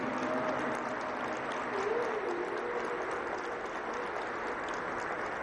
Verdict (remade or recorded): recorded